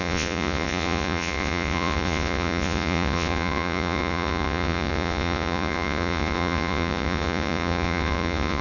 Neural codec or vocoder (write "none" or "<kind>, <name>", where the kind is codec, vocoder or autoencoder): vocoder, Vocos